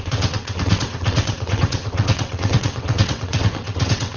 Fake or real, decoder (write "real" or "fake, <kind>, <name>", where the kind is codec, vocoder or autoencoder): fake, vocoder, WaveNeXt